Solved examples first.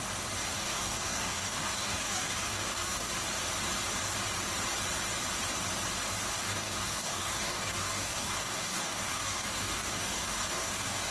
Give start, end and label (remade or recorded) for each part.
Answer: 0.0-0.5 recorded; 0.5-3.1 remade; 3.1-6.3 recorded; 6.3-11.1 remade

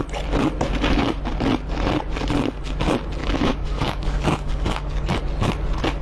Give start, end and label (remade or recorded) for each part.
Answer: 0.0-3.2 recorded; 3.2-5.2 remade; 5.2-6.0 recorded

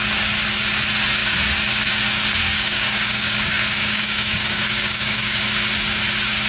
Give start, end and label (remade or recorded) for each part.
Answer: 0.0-2.4 recorded; 2.4-5.4 remade; 5.4-6.5 recorded

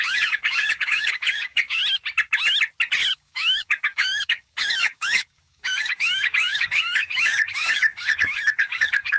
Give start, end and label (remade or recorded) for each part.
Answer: 0.0-1.8 remade; 1.8-3.1 recorded; 3.1-9.2 remade

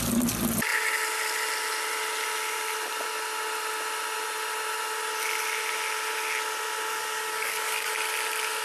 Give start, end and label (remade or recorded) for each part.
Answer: 0.0-6.9 recorded; 6.9-7.9 remade; 7.9-8.6 recorded